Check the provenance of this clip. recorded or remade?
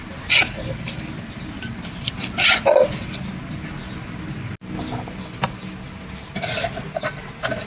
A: recorded